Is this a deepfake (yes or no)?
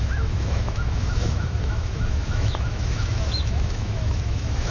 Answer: yes